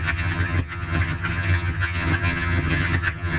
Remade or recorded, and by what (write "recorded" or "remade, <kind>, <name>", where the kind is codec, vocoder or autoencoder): remade, vocoder, HiFi-GAN